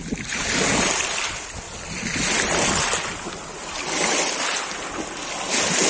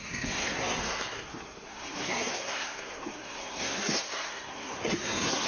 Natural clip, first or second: first